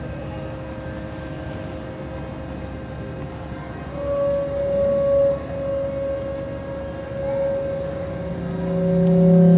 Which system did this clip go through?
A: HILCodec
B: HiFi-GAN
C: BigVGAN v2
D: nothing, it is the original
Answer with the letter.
D